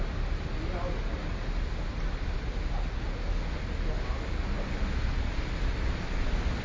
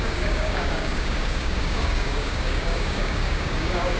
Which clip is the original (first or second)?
first